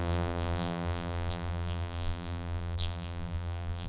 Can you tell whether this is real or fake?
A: fake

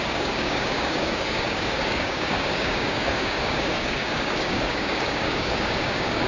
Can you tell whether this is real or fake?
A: fake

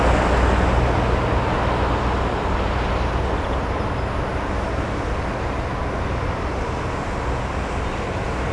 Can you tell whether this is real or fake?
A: real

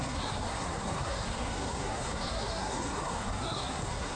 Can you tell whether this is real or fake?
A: fake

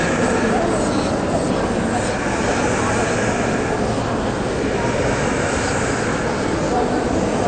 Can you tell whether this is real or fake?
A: real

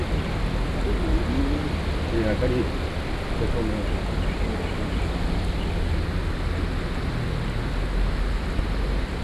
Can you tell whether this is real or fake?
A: real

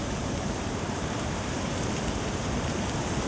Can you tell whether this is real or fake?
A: fake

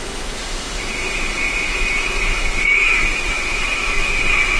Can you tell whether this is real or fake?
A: fake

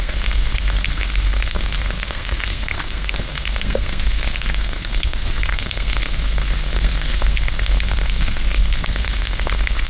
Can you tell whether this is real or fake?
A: fake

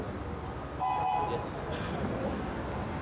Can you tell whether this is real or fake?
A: real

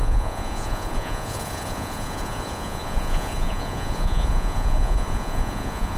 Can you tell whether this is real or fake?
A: fake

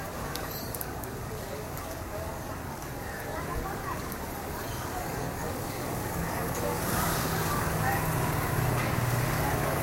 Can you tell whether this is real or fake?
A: fake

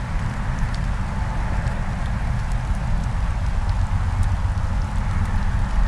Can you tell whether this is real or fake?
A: real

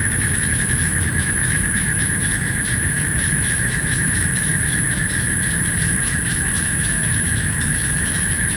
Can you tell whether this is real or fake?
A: fake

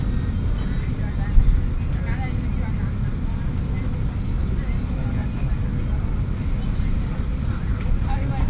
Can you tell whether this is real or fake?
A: real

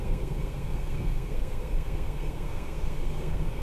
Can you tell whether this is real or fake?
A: fake